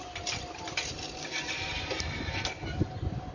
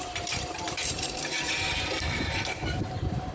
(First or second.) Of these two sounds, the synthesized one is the second